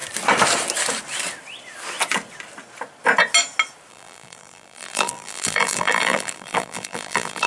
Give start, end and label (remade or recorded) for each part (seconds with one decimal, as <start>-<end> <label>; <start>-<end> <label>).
0.0-3.9 recorded; 3.9-7.5 remade